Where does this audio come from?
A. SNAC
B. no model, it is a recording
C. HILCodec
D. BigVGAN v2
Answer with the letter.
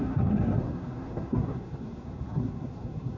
A